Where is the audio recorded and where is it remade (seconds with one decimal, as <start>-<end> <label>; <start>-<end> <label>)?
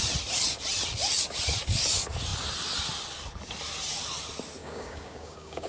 0.0-4.6 recorded; 4.6-5.7 remade